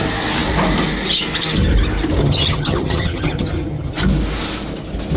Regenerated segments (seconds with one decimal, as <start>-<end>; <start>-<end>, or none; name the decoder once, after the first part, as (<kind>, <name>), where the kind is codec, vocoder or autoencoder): 2.2-3.9 (vocoder, HiFi-GAN)